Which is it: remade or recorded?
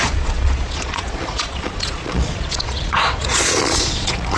remade